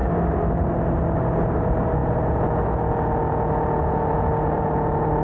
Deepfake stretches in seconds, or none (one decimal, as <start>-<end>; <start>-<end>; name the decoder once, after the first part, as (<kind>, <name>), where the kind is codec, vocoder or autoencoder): none